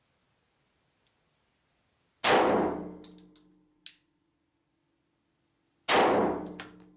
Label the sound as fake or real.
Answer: real